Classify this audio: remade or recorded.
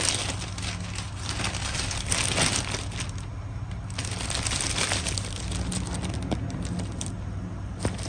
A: recorded